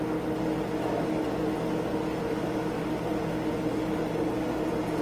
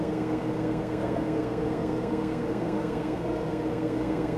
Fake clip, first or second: second